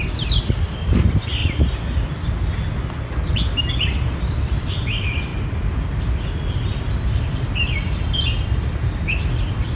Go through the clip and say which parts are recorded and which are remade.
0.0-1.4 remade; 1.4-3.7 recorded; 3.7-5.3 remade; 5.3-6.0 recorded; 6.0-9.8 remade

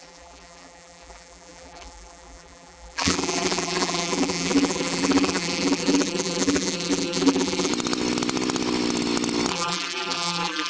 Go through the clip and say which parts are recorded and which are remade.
0.0-7.7 remade; 7.7-9.5 recorded; 9.5-10.7 remade

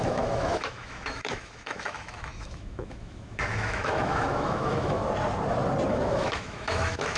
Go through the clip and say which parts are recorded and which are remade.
0.0-5.0 remade; 5.0-5.9 recorded; 5.9-7.2 remade

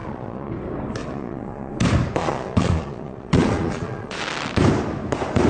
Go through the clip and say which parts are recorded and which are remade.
0.0-0.5 remade; 0.5-1.0 recorded; 1.0-1.7 remade; 1.7-2.2 recorded; 2.2-4.2 remade; 4.2-5.5 recorded

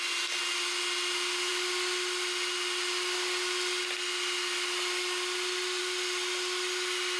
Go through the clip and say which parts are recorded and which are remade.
0.0-7.2 recorded

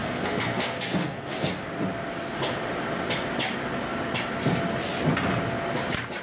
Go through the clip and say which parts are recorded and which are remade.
0.0-1.5 remade; 1.5-6.2 recorded